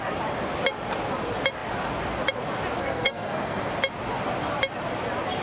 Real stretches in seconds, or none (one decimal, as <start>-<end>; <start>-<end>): 0.0-2.8; 3.7-5.4